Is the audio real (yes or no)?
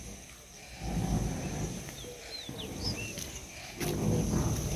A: yes